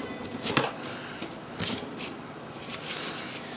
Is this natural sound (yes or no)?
yes